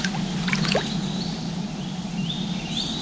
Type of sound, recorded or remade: recorded